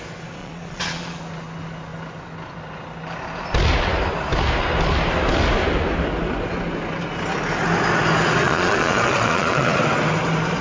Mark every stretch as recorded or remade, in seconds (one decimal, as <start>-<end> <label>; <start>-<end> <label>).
0.0-0.4 recorded; 0.4-1.2 remade; 1.2-8.4 recorded; 8.4-9.8 remade; 9.8-10.6 recorded